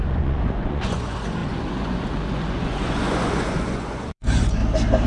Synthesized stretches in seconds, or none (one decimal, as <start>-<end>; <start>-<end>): 0.0-4.6